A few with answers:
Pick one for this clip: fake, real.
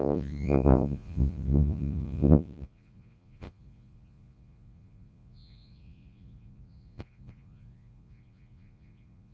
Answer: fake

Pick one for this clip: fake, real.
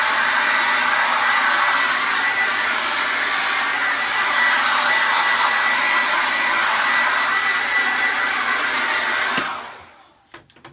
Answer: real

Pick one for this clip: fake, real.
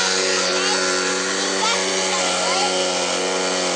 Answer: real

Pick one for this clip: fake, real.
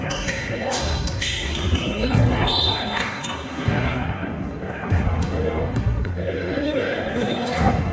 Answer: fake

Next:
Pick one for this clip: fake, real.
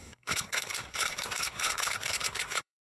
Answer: fake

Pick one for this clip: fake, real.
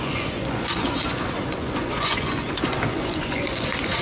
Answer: fake